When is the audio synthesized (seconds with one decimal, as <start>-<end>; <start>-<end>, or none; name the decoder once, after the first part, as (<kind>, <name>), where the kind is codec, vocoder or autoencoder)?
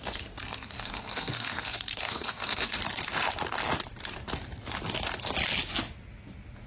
0.0-2.8 (codec, SNAC)